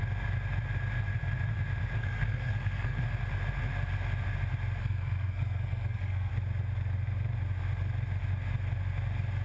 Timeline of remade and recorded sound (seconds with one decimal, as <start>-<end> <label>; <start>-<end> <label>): 0.0-2.0 recorded; 2.0-3.0 remade; 3.0-4.8 recorded; 4.8-6.3 remade; 6.3-9.4 recorded